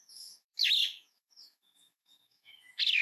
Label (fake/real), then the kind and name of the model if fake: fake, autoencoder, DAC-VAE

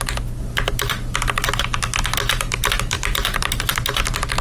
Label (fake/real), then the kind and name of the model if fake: real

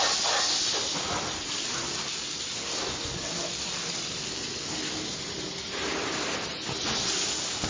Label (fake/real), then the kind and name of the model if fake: real